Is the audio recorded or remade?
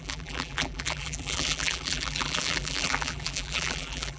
remade